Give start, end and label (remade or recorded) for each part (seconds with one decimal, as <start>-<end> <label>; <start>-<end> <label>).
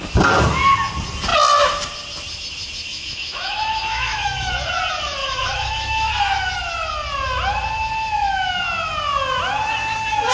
0.0-2.9 recorded; 2.9-4.5 remade; 4.5-5.2 recorded; 5.2-6.1 remade; 6.1-10.3 recorded